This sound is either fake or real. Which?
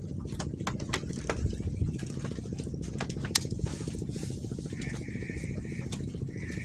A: real